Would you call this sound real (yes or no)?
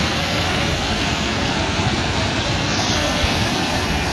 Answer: no